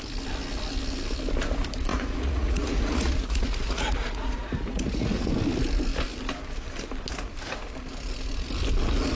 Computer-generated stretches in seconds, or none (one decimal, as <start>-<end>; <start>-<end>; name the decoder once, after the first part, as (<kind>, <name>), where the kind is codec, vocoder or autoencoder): 1.9-5.3 (vocoder, Vocos)